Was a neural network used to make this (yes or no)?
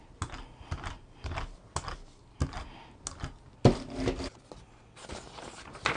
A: no